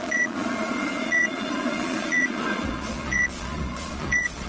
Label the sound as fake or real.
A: fake